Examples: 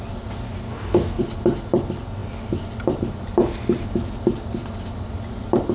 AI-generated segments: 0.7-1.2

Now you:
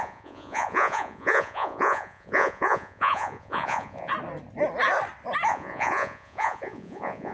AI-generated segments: 0.0-4.1; 5.5-7.3

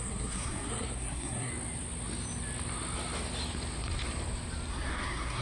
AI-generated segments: 0.0-1.5; 4.7-5.4